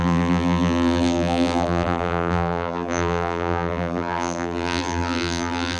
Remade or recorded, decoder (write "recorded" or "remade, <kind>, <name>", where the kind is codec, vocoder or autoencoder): remade, vocoder, BigVGAN v2